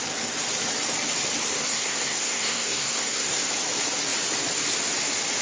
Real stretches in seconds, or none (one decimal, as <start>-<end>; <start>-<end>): 0.0-1.6; 3.5-5.4